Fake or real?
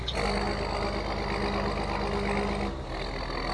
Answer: real